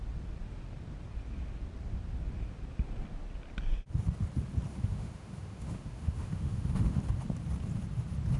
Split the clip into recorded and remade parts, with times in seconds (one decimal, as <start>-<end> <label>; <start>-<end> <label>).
0.0-4.7 recorded; 4.7-7.0 remade; 7.0-8.4 recorded